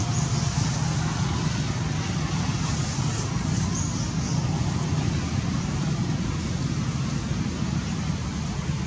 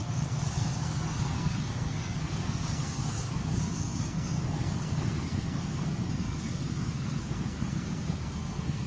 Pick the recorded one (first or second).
first